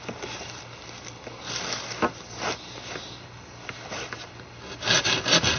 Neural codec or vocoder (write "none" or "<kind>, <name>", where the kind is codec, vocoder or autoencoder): none